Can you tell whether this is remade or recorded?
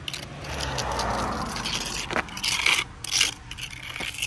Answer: recorded